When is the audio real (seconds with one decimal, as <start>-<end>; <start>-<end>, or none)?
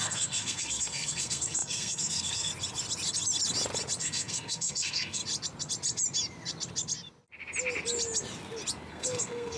2.5-4.0; 5.2-8.9